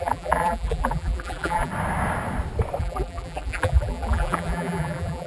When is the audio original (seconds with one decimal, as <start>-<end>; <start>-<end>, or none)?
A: 1.7-2.8